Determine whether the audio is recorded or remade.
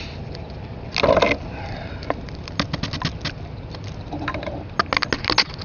recorded